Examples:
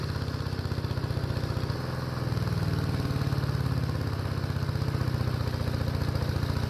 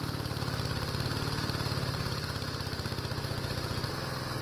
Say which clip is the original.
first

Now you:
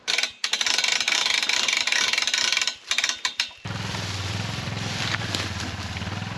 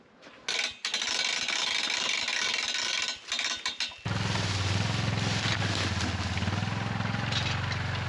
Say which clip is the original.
second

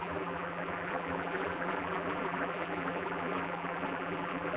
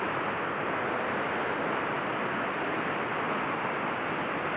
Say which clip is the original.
second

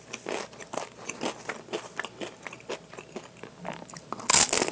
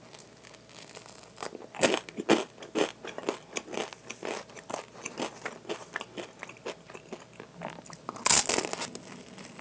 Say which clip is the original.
second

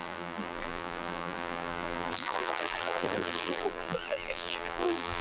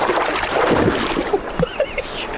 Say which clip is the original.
second